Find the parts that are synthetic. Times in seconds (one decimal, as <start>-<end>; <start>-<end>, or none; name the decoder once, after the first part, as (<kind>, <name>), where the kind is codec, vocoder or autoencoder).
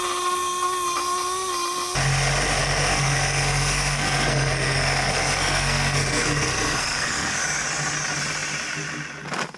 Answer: 2.6-7.4 (codec, SNAC)